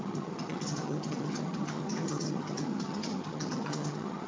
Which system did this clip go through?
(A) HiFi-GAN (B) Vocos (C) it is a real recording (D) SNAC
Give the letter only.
A